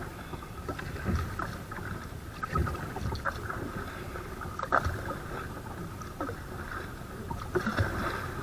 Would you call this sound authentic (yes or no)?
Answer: yes